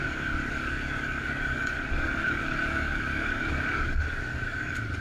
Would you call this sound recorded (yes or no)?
no